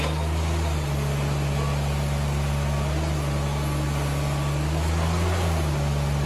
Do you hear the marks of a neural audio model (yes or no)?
no